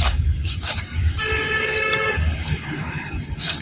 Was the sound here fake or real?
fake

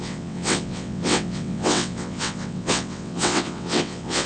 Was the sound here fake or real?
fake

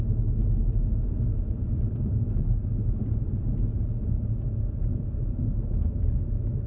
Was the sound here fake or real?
real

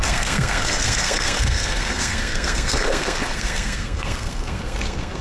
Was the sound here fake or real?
fake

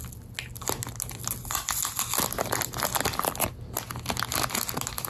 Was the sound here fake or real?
real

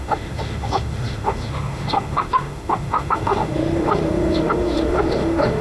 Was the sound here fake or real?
fake